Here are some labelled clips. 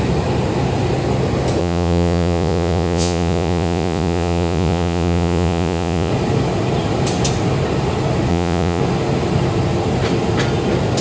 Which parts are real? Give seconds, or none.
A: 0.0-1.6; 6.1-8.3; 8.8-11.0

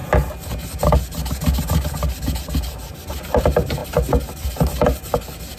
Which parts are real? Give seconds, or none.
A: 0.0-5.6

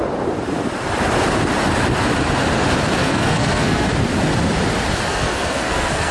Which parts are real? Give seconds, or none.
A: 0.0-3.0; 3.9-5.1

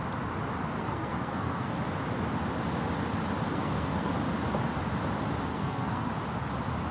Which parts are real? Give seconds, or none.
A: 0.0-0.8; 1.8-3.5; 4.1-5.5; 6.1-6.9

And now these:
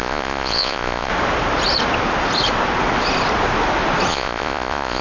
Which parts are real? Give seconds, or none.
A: 1.1-4.1

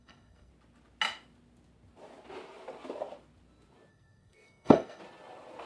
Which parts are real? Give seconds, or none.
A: 0.5-3.9; 5.0-5.7

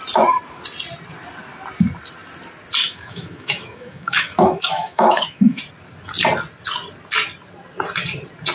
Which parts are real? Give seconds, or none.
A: 0.0-2.8; 5.6-8.5